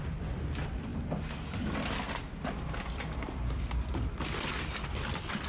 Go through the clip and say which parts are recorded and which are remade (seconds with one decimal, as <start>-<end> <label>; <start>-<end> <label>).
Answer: 0.0-0.9 remade; 0.9-2.7 recorded; 2.7-5.5 remade